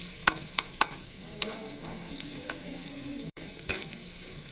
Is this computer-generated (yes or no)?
yes